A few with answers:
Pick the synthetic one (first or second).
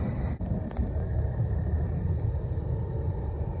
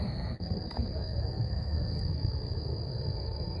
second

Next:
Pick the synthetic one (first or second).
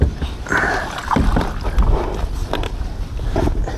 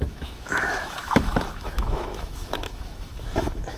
second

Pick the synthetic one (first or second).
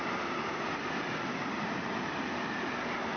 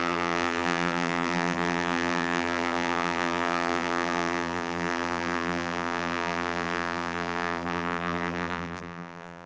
second